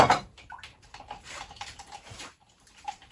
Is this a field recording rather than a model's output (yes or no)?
no